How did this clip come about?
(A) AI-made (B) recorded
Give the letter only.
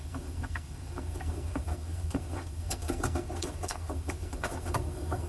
A